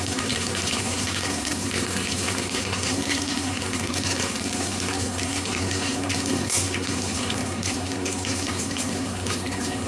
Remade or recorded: remade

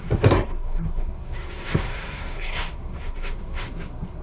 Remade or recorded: remade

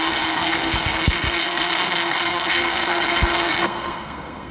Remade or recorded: remade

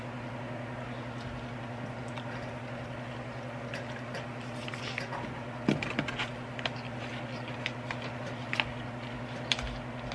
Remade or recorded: recorded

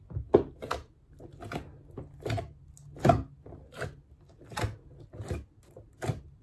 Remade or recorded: recorded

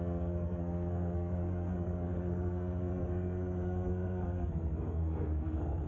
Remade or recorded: remade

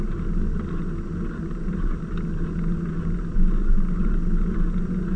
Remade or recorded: recorded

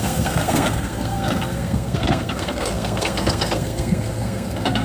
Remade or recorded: remade